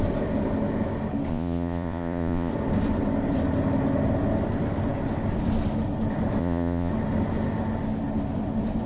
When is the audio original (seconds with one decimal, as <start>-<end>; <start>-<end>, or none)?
0.0-1.3; 2.5-6.4; 6.9-8.9

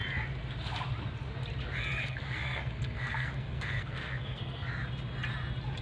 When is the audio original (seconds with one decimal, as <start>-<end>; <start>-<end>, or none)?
0.0-2.0; 4.7-5.8

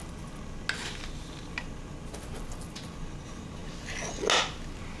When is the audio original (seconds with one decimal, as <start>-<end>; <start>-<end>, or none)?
0.0-5.0

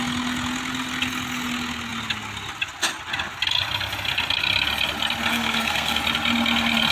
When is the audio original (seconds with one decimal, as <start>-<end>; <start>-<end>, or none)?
0.0-5.3; 6.0-6.9

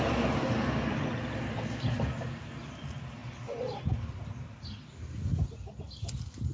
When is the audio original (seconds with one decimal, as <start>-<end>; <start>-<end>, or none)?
0.0-6.5

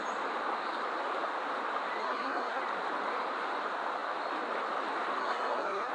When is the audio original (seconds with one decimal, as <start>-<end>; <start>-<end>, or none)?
0.0-2.0; 2.6-5.2

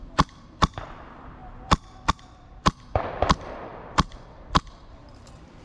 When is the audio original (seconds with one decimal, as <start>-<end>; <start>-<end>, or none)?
1.4-2.1

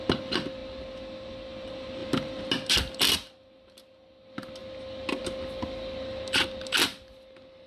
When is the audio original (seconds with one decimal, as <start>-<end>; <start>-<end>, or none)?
0.0-7.7